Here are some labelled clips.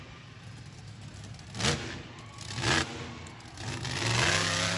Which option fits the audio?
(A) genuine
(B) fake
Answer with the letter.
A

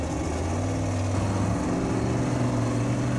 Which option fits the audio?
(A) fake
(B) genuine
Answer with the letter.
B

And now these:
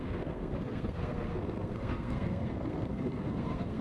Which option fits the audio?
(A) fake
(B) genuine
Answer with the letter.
A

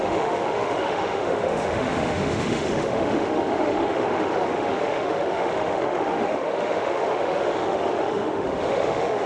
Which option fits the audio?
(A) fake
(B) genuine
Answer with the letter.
A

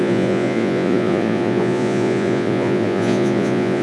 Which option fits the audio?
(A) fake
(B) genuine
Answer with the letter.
A